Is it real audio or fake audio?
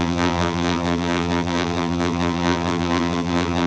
fake